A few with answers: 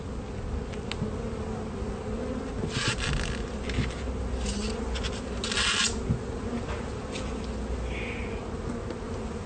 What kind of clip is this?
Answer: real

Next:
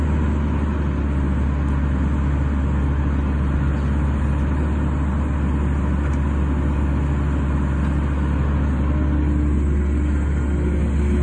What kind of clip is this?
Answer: real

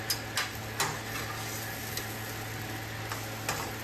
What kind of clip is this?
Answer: real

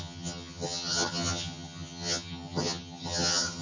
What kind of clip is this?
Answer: fake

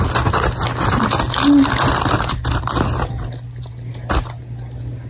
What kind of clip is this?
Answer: real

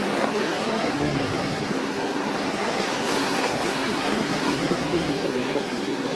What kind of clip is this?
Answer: fake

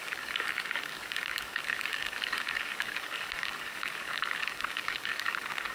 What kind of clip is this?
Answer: fake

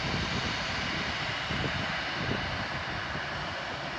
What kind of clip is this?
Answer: real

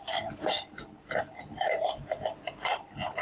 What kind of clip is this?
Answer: fake